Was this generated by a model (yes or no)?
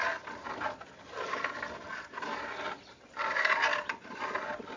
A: yes